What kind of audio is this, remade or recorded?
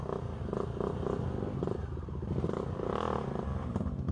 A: recorded